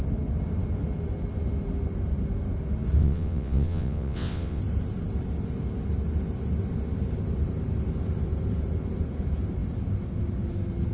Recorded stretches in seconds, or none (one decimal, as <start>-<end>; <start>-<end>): 0.0-3.0; 4.6-10.9